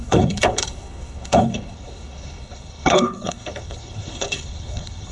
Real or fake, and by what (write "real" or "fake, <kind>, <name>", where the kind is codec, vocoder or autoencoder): fake, codec, HILCodec